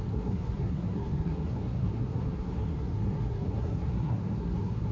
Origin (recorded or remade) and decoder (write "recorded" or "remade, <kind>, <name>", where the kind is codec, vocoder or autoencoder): remade, codec, SNAC